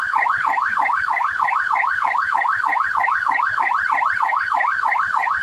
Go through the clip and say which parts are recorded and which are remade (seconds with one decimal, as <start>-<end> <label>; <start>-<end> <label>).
0.0-3.7 remade; 3.7-4.2 recorded; 4.2-5.4 remade